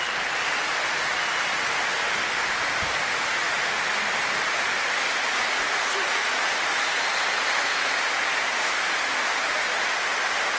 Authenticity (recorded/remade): recorded